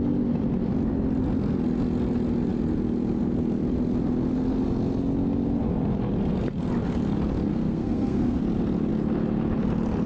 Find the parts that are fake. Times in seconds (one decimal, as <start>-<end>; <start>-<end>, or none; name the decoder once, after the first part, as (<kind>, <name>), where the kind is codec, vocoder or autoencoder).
7.5-8.4 (codec, SNAC)